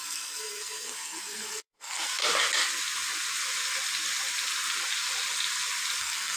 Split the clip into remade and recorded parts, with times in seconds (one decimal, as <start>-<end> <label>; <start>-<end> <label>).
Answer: 0.0-2.2 remade; 2.2-6.0 recorded; 6.0-6.4 remade